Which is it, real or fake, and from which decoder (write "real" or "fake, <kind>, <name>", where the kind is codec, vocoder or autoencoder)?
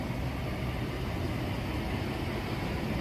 real